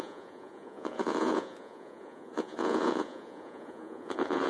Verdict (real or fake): fake